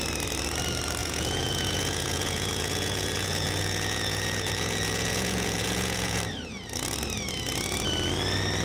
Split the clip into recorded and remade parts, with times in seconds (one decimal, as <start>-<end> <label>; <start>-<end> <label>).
0.0-1.0 recorded; 1.0-6.2 remade; 6.2-8.6 recorded